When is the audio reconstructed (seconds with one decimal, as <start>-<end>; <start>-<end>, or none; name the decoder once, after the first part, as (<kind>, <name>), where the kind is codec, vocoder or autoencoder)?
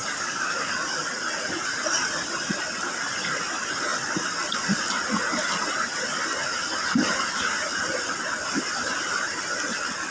0.0-0.7 (codec, DAC)